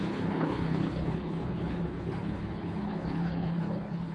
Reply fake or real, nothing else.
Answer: fake